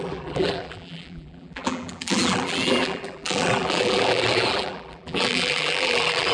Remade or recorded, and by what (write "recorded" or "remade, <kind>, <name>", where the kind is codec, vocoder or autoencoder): remade, vocoder, BigVGAN v2